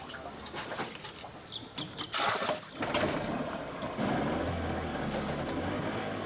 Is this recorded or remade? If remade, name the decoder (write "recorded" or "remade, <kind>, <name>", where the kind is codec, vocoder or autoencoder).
recorded